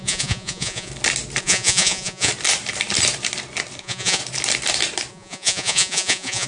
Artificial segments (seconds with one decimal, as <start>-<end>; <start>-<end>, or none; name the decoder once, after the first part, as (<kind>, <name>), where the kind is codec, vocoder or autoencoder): 0.0-0.9 (vocoder, Vocos); 1.4-2.3; 3.8-4.2; 5.1-6.5